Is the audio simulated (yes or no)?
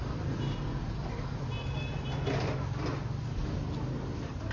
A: no